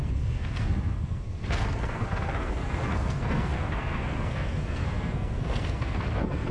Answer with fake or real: fake